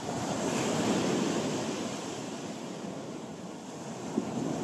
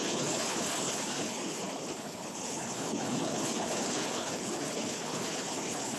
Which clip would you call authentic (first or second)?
first